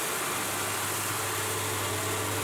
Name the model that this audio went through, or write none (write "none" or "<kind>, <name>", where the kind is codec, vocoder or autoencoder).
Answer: none